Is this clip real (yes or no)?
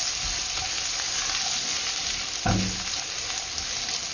yes